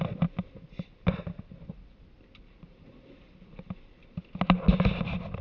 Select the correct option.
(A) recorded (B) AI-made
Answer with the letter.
A